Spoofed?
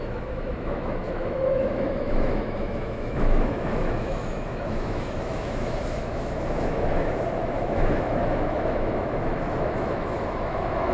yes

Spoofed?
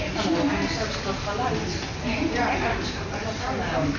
no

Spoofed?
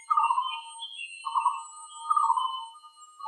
no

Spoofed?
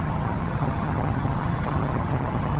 yes